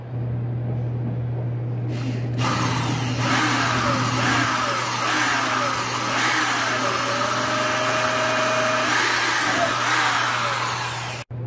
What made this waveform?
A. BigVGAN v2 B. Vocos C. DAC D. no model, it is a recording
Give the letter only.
D